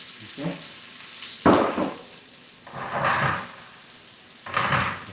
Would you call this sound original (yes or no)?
yes